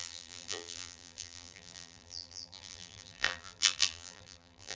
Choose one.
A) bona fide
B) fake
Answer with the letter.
B